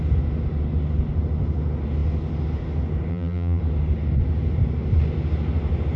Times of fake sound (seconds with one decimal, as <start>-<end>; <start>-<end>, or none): 3.1-3.6